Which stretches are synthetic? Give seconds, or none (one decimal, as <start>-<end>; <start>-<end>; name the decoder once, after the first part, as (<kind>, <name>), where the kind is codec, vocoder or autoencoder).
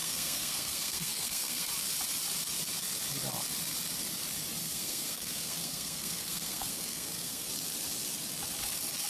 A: 0.0-1.7 (codec, SNAC); 4.6-7.5